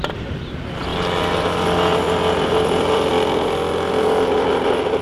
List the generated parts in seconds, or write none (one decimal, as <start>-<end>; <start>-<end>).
0.0-0.9; 2.4-3.1; 3.9-5.0